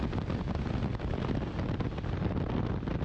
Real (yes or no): yes